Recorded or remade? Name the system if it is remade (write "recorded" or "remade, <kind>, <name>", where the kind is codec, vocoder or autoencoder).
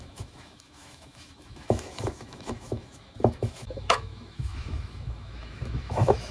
remade, autoencoder, DAC-VAE